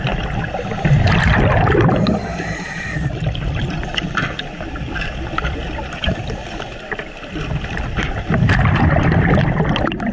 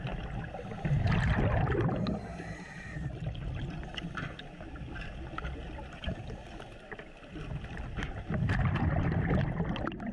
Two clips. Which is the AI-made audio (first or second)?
first